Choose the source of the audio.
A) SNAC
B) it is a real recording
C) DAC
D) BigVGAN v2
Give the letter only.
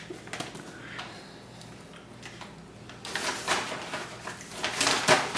B